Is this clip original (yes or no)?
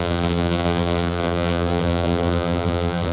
no